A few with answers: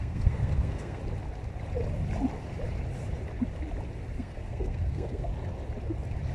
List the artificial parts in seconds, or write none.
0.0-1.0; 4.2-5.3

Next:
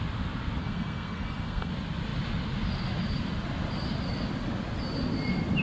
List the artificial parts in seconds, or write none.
0.6-1.7